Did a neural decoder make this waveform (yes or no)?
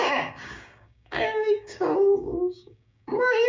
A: yes